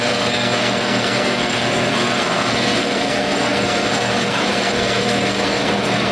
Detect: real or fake fake